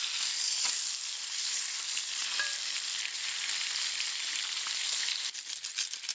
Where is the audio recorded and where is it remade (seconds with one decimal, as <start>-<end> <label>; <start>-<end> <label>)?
0.0-2.2 recorded; 2.2-4.3 remade; 4.3-6.1 recorded